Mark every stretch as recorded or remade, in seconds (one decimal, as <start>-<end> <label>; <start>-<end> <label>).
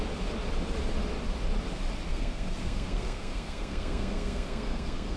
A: 0.0-2.1 recorded; 2.1-5.2 remade